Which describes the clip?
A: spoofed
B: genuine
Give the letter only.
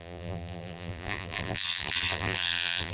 A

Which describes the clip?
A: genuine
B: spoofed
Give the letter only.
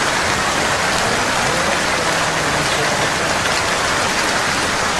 A